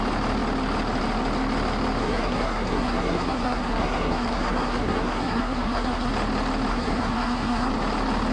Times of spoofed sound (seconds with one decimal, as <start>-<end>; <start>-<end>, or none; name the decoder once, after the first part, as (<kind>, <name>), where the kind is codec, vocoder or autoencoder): 2.0-6.1 (codec, SNAC); 6.7-7.7